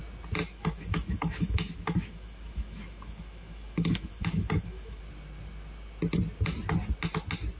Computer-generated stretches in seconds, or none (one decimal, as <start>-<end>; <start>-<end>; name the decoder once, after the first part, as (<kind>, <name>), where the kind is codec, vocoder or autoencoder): 0.4-5.0 (autoencoder, DAC-VAE)